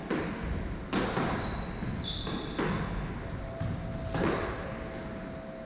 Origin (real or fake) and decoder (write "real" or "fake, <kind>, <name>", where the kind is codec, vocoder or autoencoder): real